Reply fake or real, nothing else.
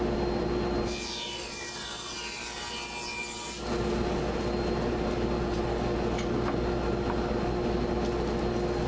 real